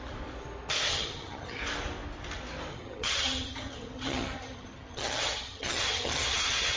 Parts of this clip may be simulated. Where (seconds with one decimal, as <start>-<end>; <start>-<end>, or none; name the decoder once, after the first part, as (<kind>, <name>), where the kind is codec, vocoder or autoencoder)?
0.9-1.6 (vocoder, HiFi-GAN); 2.7-6.8